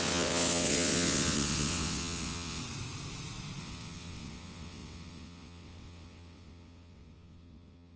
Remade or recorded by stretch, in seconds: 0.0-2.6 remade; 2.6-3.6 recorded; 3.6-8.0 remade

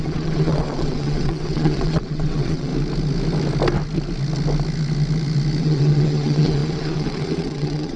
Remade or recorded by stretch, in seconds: 0.0-2.7 remade; 2.7-5.6 recorded; 5.6-8.0 remade

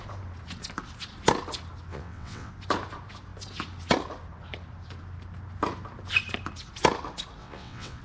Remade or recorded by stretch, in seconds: 0.0-1.9 recorded; 1.9-2.5 remade; 2.5-7.4 recorded; 7.4-8.0 remade